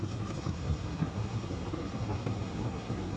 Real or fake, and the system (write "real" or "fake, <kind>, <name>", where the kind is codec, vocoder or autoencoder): fake, codec, SNAC